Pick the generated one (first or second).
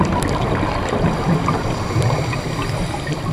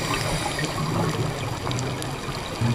first